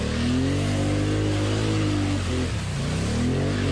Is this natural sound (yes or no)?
yes